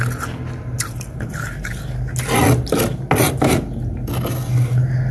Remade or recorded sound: recorded